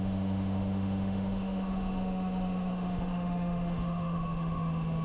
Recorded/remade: remade